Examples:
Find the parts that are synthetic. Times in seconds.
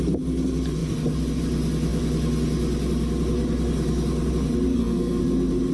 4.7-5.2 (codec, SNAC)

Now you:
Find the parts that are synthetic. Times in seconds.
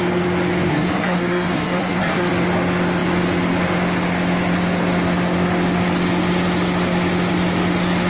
0.7-2.3 (codec, SNAC)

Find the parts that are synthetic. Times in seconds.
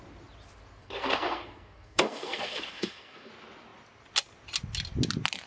0.8-3.3 (codec, SNAC)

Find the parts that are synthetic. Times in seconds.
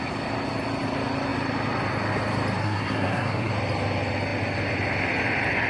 2.6-3.5 (codec, SNAC)